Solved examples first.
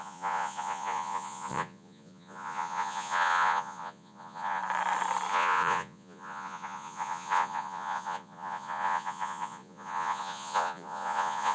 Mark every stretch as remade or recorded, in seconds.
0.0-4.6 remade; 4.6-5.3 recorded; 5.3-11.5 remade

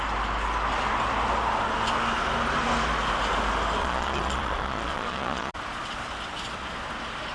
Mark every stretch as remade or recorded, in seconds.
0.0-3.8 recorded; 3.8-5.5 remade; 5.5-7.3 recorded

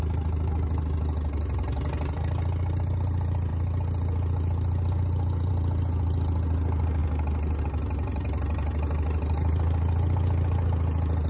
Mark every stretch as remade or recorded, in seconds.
0.0-11.3 recorded

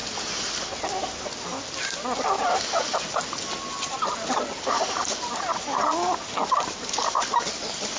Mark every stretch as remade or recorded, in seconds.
0.0-8.0 recorded

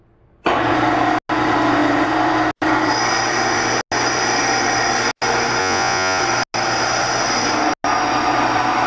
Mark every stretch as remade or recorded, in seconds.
0.0-5.6 recorded; 5.6-6.2 remade; 6.2-8.9 recorded

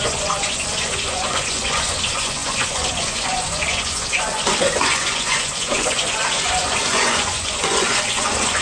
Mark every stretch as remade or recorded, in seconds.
0.0-8.6 remade

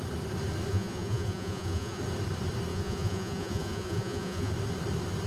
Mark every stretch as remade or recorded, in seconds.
0.0-0.7 recorded; 0.7-2.0 remade; 2.0-2.7 recorded; 2.7-4.5 remade; 4.5-5.3 recorded